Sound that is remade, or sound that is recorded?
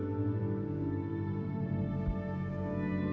recorded